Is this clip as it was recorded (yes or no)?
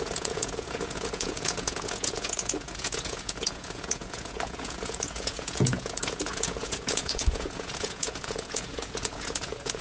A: no